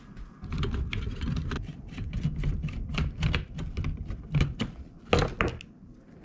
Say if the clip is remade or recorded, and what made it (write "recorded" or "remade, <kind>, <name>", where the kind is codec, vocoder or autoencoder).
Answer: recorded